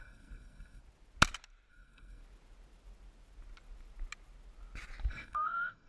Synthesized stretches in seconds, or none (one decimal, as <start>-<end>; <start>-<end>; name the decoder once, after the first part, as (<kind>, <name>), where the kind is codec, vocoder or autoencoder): 0.0-0.8 (codec, SNAC); 1.7-2.2; 5.1-5.9